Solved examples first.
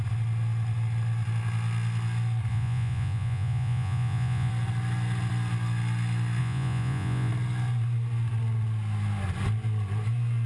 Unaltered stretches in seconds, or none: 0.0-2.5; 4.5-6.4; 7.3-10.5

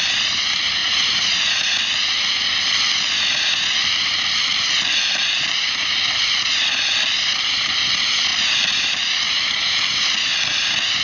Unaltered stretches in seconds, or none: 0.0-0.8; 1.5-11.0